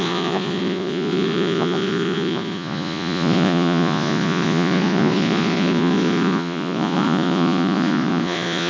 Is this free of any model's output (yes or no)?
no